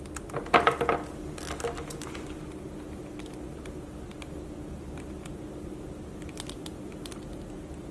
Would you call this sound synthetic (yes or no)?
no